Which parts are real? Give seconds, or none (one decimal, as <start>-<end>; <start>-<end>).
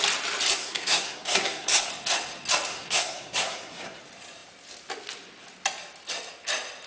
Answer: 0.0-0.6; 1.9-2.7; 4.0-6.9